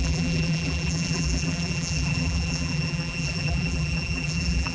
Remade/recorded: remade